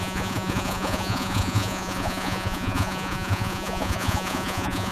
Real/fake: fake